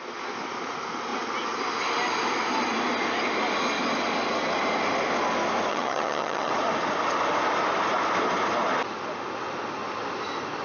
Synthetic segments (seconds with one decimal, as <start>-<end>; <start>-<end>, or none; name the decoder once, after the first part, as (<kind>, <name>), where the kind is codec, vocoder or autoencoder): 5.7-6.5 (vocoder, HiFi-GAN)